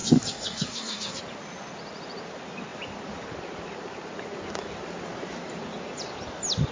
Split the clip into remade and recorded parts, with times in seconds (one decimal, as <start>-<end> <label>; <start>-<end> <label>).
0.0-1.2 remade; 1.2-6.7 recorded